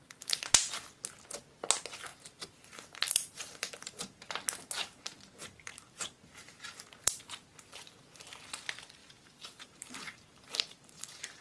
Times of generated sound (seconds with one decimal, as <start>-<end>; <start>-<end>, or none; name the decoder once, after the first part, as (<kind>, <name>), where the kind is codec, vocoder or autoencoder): 2.1-4.2 (vocoder, BigVGAN v2); 5.4-7.2; 9.0-11.4